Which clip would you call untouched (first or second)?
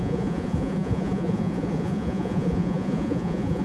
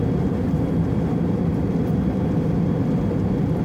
second